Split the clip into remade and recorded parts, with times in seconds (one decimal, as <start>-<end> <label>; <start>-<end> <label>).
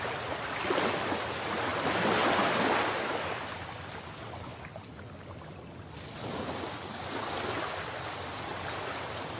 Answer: 0.0-9.4 recorded